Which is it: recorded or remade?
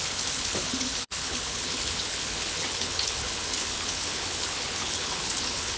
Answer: remade